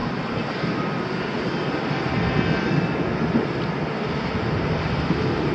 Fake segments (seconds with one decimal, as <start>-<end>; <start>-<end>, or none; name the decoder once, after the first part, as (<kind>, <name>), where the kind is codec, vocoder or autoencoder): none